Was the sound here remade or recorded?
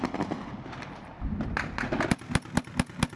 recorded